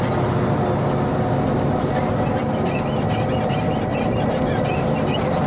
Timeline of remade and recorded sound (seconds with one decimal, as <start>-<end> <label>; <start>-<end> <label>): 0.0-5.5 recorded